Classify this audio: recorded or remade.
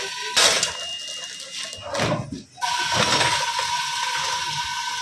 recorded